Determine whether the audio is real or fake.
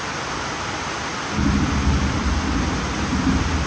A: real